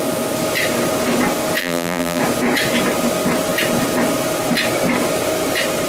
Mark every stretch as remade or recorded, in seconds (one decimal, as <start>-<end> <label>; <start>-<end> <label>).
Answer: 0.0-1.6 recorded; 1.6-2.2 remade; 2.2-5.9 recorded